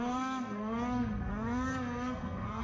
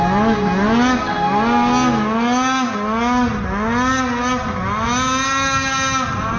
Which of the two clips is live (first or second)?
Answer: second